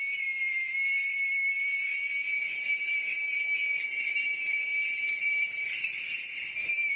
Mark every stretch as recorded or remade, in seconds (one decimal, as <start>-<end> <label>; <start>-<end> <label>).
0.0-1.9 remade; 1.9-2.7 recorded; 2.7-3.1 remade; 3.1-4.1 recorded; 4.1-4.7 remade; 4.7-5.2 recorded; 5.2-7.0 remade